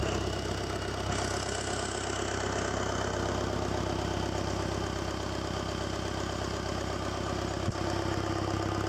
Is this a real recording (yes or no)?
yes